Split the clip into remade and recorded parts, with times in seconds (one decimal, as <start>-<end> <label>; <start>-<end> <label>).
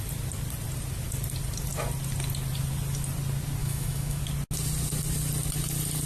0.0-3.6 recorded; 3.6-4.2 remade; 4.2-6.1 recorded